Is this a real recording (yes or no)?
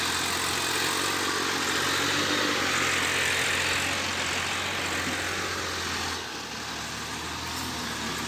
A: yes